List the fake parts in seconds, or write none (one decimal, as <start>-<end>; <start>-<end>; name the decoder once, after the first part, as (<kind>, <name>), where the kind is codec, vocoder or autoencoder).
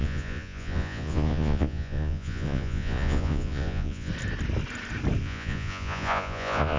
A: 0.0-4.1 (vocoder, Vocos); 5.2-6.8